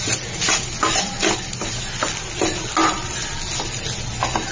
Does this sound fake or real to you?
real